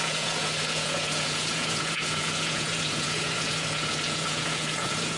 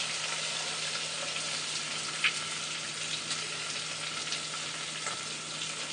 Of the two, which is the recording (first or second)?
second